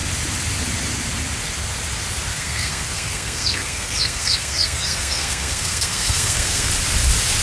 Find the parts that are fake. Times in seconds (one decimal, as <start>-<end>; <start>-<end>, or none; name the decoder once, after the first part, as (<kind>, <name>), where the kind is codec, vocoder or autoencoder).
2.3-6.7 (codec, SNAC)